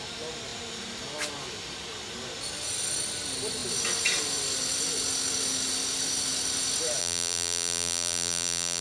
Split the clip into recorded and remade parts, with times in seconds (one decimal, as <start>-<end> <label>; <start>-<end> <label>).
0.0-7.0 recorded; 7.0-8.8 remade